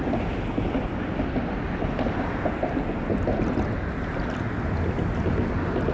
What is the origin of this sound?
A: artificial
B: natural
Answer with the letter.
B